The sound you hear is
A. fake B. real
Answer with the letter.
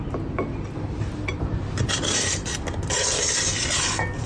B